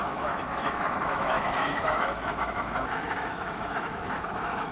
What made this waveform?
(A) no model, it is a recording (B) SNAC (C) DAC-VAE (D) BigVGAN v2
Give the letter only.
C